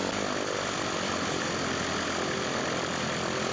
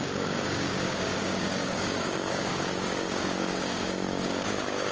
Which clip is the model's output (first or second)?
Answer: second